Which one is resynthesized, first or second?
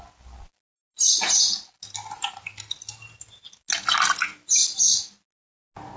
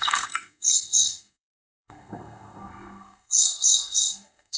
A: second